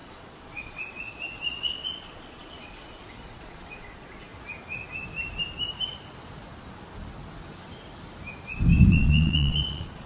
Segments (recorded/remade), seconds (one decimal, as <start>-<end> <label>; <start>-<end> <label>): 0.0-4.3 remade; 4.3-8.9 recorded; 8.9-10.1 remade